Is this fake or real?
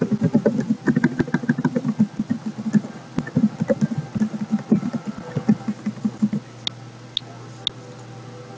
real